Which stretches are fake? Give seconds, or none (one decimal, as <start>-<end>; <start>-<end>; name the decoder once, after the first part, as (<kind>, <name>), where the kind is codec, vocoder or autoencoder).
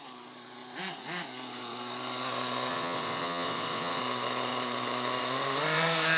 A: 2.7-4.0 (vocoder, WaveNeXt)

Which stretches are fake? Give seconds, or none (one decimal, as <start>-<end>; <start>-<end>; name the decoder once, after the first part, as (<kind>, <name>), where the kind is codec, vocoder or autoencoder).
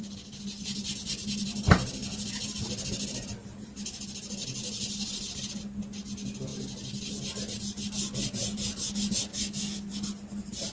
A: 9.3-9.8 (autoencoder, DAC-VAE)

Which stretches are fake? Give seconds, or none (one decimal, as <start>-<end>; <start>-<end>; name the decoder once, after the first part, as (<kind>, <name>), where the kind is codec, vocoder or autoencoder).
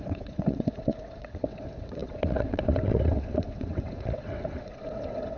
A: 0.0-5.4 (vocoder, WaveNeXt)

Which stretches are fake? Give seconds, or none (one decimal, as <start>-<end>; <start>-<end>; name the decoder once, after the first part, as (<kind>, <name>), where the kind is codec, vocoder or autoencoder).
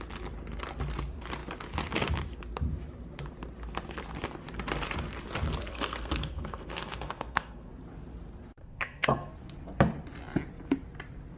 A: 5.7-7.7 (codec, SNAC); 8.6-9.3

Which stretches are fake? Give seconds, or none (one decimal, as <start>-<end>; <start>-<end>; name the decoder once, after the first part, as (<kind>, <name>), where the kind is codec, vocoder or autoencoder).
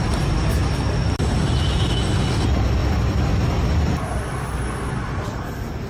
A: none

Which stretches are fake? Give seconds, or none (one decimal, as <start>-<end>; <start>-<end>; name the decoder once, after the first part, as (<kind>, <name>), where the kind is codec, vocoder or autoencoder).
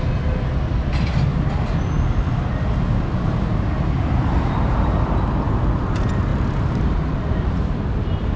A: 6.3-7.5 (vocoder, BigVGAN v2)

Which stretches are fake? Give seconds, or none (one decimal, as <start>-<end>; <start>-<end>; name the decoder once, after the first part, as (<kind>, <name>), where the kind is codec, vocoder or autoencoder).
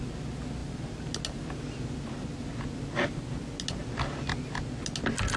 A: none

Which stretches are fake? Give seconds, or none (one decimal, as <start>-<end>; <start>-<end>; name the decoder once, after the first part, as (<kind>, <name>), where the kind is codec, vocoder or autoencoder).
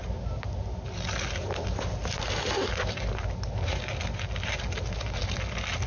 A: none